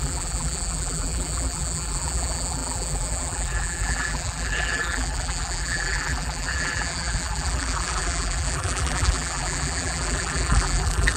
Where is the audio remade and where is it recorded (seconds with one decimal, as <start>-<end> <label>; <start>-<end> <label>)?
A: 0.0-11.2 remade